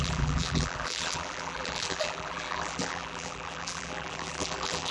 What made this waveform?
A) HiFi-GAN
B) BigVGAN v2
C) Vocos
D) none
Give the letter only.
B